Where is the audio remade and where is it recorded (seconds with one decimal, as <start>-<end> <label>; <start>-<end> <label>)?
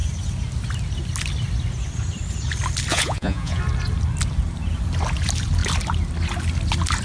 0.0-2.9 recorded; 2.9-3.6 remade; 3.6-7.0 recorded